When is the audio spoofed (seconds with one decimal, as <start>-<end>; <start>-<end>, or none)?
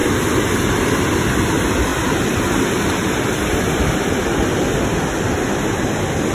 1.9-3.9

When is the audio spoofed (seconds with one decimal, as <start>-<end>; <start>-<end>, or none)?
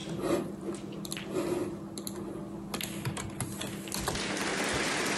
0.0-0.7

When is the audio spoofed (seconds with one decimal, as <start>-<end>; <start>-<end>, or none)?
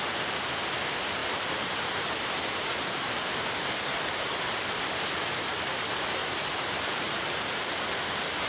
3.9-4.7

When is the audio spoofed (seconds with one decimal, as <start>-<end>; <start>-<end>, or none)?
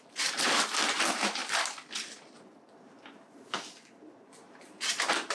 0.0-1.4; 4.6-5.3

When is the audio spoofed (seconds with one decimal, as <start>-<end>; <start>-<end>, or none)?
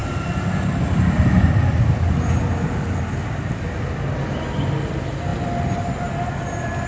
none